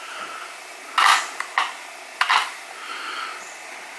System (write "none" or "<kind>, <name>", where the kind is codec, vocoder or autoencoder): none